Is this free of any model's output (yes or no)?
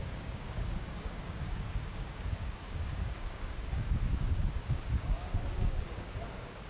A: no